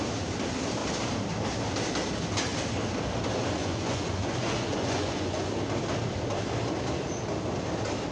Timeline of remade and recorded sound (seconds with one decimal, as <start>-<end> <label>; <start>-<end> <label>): 0.0-3.6 recorded; 3.6-5.5 remade; 5.5-8.1 recorded